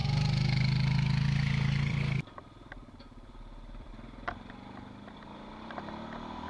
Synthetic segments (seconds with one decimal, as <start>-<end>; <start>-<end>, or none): 0.0-3.9